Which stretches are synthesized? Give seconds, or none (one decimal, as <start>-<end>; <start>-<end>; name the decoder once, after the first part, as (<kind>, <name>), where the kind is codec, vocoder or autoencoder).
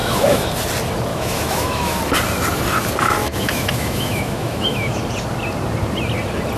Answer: 0.0-0.5 (autoencoder, DAC-VAE); 1.1-2.0; 3.2-5.0